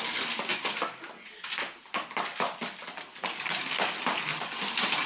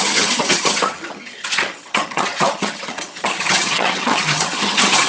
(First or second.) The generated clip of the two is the second